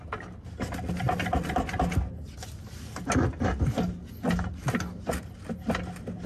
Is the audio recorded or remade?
recorded